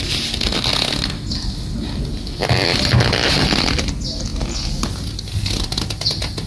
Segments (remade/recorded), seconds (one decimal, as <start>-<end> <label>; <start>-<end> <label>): 0.0-6.5 recorded